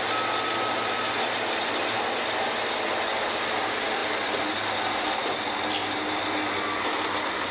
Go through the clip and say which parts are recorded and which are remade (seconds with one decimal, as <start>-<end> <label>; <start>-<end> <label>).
0.0-7.5 recorded